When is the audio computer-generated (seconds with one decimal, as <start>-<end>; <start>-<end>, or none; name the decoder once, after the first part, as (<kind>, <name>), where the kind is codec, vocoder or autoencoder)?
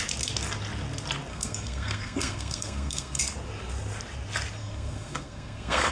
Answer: 1.3-3.2 (codec, SNAC); 4.6-5.9